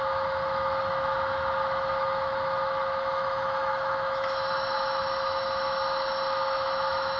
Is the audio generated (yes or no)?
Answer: yes